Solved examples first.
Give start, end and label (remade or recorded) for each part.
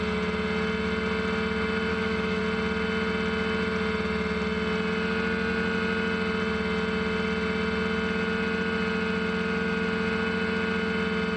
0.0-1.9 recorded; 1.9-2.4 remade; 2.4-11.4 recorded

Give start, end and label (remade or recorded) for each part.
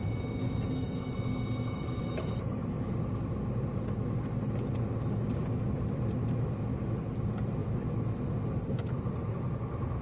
0.0-2.9 remade; 2.9-10.0 recorded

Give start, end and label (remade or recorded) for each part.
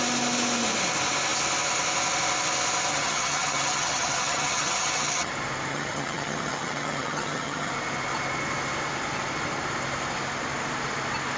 0.0-2.9 recorded; 2.9-5.3 remade; 5.3-5.7 recorded; 5.7-7.7 remade; 7.7-11.4 recorded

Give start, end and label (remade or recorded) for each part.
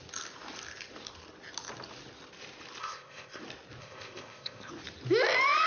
0.0-2.8 recorded; 2.8-3.4 remade; 3.4-3.8 recorded; 3.8-4.7 remade; 4.7-5.7 recorded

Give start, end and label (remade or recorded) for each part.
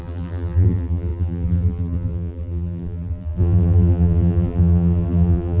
0.0-5.6 remade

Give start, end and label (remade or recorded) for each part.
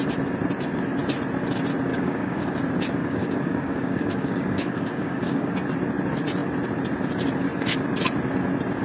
0.0-1.9 recorded; 1.9-2.5 remade; 2.5-3.0 recorded; 3.0-5.5 remade; 5.5-8.8 recorded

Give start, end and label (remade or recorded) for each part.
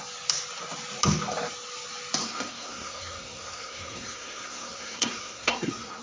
0.0-2.2 recorded; 2.2-6.0 remade